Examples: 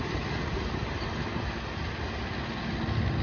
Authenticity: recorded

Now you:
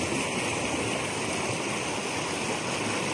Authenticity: recorded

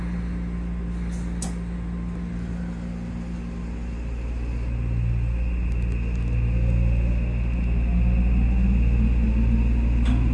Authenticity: recorded